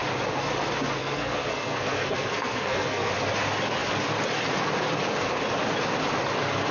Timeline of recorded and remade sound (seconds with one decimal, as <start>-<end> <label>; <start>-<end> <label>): 0.0-1.0 recorded; 1.0-3.1 remade; 3.1-6.7 recorded